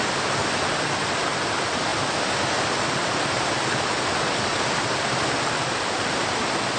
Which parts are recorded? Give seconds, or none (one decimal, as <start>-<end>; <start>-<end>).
0.0-6.8